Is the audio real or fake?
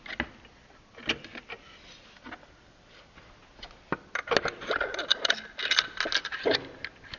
real